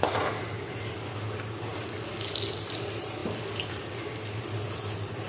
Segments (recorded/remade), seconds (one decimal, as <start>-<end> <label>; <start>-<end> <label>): 0.0-5.3 recorded